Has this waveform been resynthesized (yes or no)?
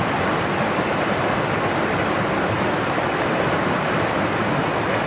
no